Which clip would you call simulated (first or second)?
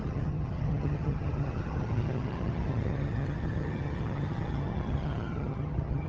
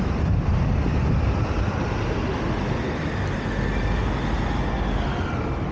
first